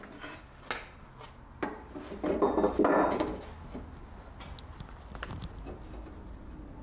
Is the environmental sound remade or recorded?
recorded